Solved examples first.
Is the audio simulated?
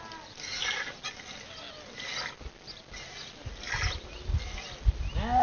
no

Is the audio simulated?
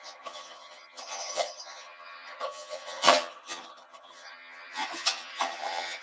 yes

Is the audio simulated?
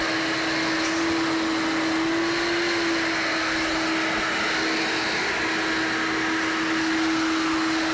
no